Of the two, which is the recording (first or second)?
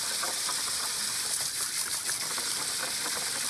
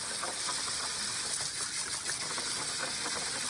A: second